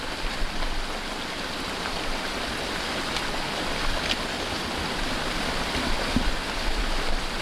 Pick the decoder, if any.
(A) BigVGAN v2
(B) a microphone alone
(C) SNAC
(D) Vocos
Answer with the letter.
B